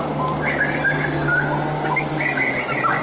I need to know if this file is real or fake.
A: real